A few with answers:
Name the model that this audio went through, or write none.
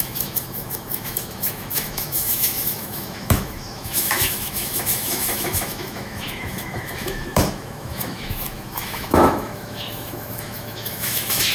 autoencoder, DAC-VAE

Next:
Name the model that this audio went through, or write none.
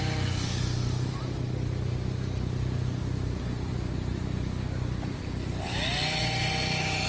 none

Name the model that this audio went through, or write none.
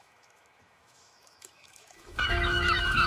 autoencoder, DAC-VAE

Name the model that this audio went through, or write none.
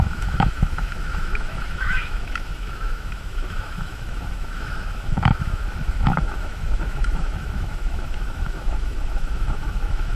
autoencoder, DAC-VAE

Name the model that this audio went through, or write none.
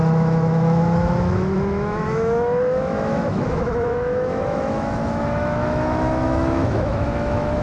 autoencoder, DAC-VAE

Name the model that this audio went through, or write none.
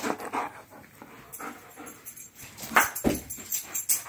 none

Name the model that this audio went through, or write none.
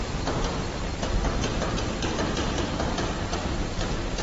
none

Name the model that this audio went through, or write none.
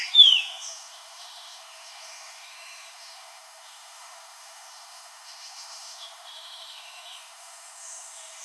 autoencoder, DAC-VAE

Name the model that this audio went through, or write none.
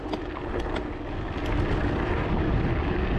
none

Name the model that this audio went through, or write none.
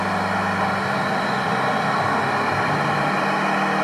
none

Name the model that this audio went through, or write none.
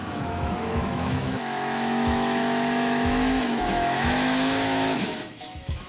autoencoder, DAC-VAE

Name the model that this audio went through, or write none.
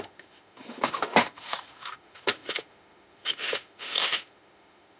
autoencoder, DAC-VAE